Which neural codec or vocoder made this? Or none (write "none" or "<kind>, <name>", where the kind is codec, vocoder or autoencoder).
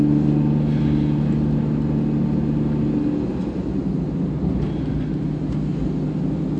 none